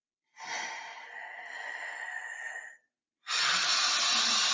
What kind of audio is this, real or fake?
real